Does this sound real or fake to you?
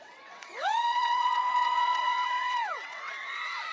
fake